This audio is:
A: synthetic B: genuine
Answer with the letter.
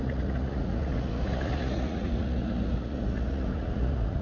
A